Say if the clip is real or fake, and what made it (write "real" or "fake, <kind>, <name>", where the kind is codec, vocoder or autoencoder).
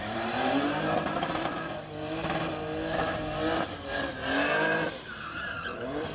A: fake, vocoder, BigVGAN v2